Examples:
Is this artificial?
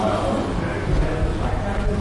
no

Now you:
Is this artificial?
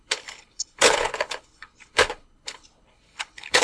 yes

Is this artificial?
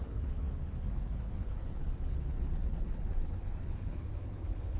yes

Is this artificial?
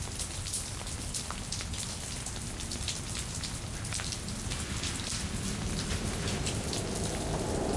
no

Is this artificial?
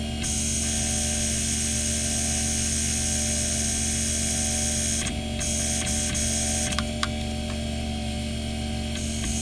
no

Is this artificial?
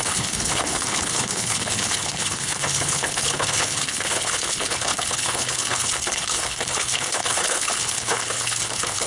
yes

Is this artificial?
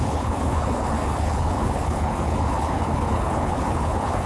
yes